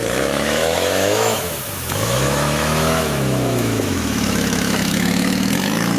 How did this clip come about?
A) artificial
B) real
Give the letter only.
A